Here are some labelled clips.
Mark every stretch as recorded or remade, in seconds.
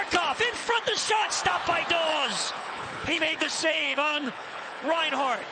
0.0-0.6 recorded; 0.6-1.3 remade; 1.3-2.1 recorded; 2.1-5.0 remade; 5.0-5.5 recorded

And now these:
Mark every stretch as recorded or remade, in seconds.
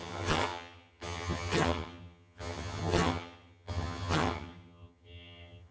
0.0-5.7 remade